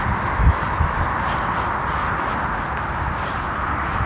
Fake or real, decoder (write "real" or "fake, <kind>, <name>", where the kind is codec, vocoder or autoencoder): real